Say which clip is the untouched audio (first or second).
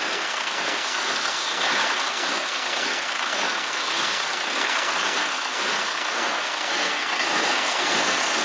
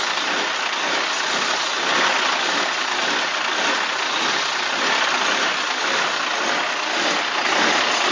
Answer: second